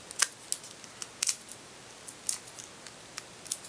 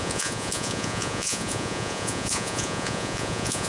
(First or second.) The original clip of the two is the first